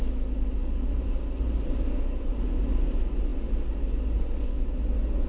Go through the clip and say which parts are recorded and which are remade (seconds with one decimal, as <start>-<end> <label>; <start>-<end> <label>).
0.0-0.6 recorded; 0.6-2.9 remade; 2.9-5.3 recorded